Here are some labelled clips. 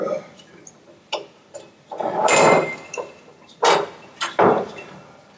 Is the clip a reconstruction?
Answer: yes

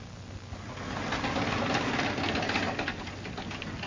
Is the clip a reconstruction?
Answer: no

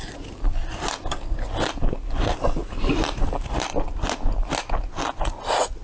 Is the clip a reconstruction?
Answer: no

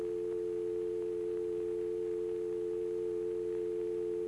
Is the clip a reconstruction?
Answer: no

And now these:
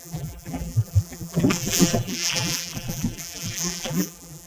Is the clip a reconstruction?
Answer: yes